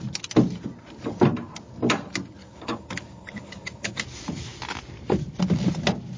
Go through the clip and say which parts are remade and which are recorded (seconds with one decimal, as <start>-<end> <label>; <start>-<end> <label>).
0.0-2.4 recorded; 2.4-4.0 remade; 4.0-6.2 recorded